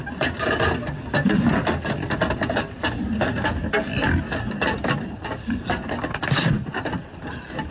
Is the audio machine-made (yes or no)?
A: no